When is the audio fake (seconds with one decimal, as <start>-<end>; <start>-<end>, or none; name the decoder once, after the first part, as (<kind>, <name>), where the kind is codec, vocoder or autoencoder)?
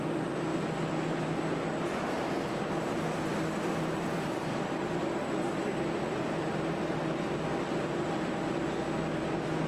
3.3-7.0 (vocoder, BigVGAN v2)